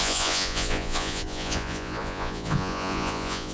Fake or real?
fake